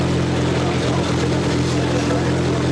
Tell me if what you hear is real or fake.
real